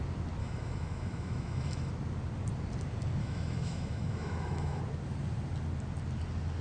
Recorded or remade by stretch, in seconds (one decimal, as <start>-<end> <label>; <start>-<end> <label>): 0.0-0.4 recorded; 0.4-1.9 remade; 1.9-3.2 recorded; 3.2-4.8 remade; 4.8-6.6 recorded